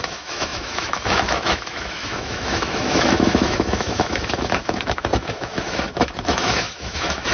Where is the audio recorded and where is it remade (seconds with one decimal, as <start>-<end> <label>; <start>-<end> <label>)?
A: 0.0-7.3 remade